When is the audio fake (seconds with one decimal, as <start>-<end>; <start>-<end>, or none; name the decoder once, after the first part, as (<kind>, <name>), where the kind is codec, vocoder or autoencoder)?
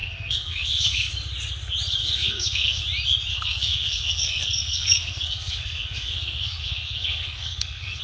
0.0-1.1 (codec, SNAC); 2.0-2.8; 3.3-8.0